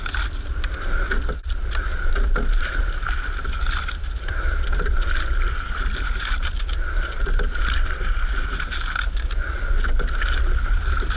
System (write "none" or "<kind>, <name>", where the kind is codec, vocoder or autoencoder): none